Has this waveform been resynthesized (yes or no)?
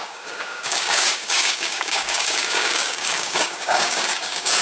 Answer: yes